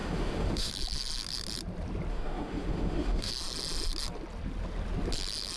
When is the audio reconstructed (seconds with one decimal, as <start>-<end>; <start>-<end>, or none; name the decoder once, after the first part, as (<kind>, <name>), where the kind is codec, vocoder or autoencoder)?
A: 0.0-0.7 (autoencoder, DAC-VAE); 2.1-3.3